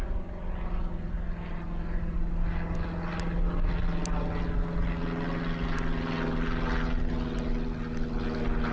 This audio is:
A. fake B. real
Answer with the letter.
B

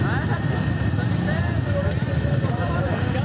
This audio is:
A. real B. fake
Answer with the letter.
A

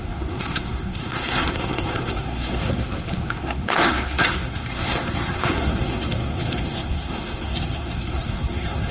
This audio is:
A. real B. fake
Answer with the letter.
B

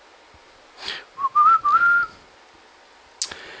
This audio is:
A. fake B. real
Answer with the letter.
B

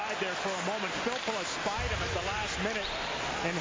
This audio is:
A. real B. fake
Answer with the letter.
A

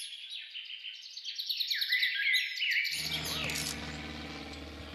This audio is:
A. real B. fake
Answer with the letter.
A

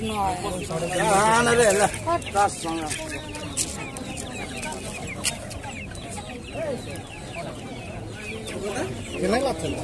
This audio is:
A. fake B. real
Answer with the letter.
B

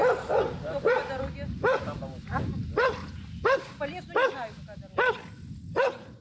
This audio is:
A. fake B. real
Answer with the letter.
B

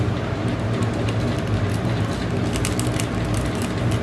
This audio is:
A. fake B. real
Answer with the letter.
B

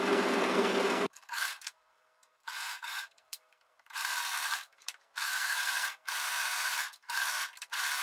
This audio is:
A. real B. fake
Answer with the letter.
B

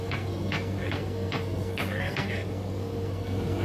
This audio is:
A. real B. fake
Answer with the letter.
B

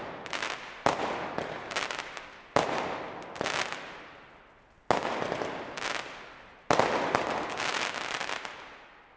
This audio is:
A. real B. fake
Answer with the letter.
A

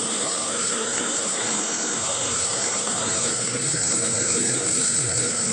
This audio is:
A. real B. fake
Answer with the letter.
B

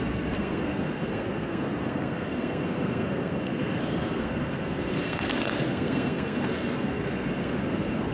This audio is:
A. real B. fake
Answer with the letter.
B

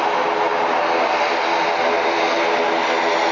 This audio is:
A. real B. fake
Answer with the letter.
A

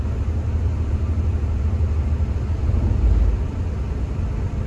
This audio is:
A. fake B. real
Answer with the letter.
B